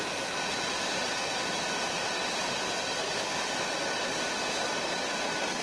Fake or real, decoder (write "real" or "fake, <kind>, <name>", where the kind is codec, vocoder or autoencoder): real